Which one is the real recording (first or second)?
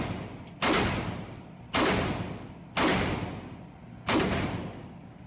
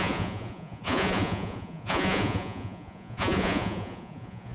first